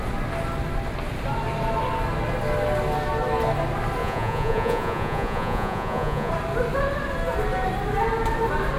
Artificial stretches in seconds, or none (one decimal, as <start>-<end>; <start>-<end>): 4.0-6.3